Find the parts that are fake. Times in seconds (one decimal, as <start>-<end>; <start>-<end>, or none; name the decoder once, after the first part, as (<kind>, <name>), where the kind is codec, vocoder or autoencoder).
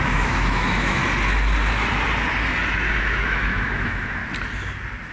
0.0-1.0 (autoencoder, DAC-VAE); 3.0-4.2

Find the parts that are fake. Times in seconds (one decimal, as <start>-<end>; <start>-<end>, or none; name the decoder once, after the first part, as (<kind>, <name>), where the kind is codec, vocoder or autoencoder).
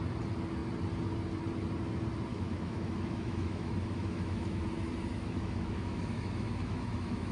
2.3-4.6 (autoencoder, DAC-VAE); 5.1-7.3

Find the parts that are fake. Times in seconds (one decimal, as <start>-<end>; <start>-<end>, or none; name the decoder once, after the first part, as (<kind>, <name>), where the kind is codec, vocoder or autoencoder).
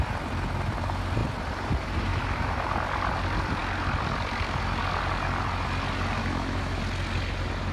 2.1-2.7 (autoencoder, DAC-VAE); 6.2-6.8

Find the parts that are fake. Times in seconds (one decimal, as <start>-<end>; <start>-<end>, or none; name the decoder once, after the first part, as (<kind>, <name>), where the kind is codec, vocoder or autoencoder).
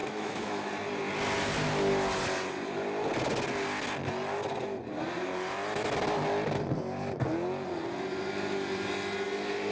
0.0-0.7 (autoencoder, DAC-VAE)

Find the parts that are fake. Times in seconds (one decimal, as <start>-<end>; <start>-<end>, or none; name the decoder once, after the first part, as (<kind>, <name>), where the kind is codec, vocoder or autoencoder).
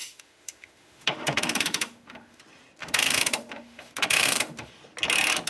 0.0-2.4 (autoencoder, DAC-VAE); 2.8-4.7